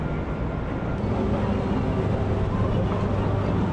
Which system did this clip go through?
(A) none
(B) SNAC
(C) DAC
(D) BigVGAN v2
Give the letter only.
A